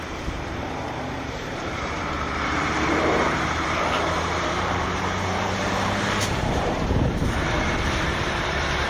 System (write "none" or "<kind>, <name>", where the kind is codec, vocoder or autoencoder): vocoder, BigVGAN v2